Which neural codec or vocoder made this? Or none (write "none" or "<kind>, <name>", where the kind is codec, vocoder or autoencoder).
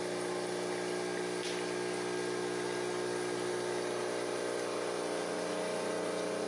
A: none